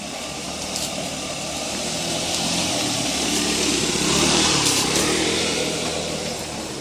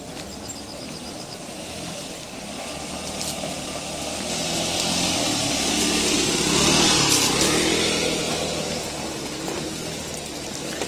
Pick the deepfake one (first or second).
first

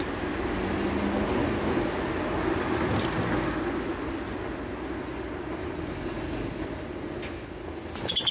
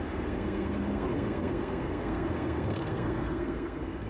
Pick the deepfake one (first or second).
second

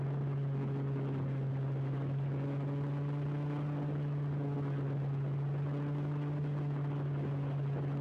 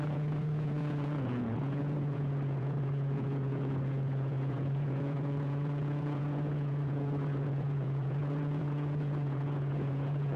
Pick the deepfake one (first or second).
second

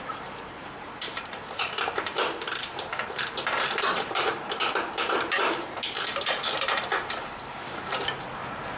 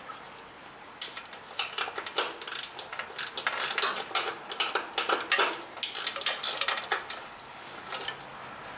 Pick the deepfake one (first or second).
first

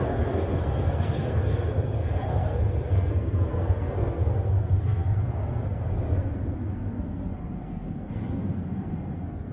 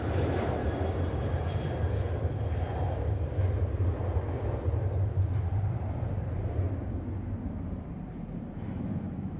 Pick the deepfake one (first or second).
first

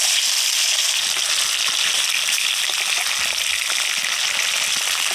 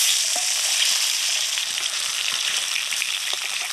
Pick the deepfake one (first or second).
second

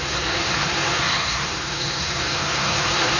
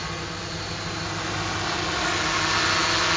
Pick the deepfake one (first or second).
first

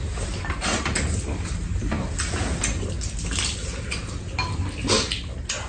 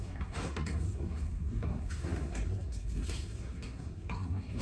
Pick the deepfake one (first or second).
second